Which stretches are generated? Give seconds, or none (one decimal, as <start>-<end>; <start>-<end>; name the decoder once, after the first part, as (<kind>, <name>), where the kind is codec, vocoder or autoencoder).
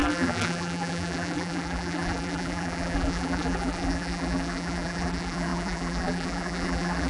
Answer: 0.0-7.1 (vocoder, BigVGAN v2)